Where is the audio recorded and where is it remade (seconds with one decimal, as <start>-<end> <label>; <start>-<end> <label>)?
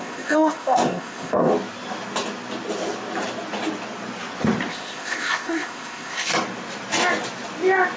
0.0-1.5 remade; 1.5-4.7 recorded; 4.7-6.3 remade; 6.3-8.0 recorded